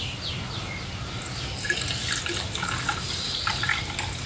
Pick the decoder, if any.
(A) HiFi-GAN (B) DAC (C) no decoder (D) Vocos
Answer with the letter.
C